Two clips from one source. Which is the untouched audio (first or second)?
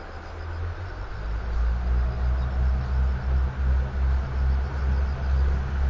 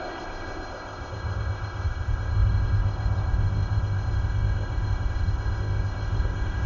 first